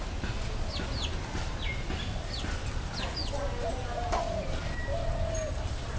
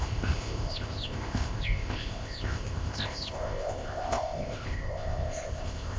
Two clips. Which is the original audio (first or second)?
first